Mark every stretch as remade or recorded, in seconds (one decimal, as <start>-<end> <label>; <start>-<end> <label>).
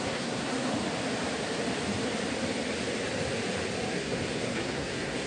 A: 0.0-0.7 remade; 0.7-3.9 recorded; 3.9-5.3 remade